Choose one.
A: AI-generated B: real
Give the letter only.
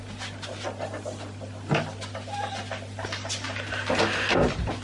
B